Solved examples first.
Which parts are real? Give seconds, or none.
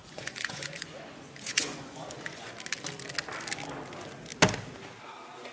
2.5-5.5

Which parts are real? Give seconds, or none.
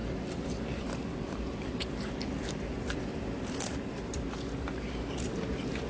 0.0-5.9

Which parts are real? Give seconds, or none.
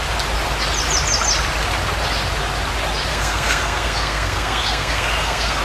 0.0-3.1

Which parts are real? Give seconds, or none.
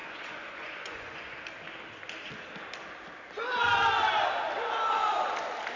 1.4-5.8